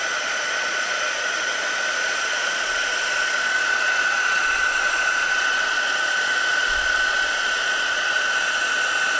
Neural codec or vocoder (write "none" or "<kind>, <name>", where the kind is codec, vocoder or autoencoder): vocoder, Vocos